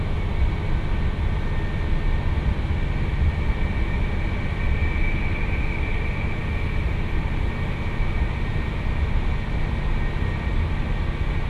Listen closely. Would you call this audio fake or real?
real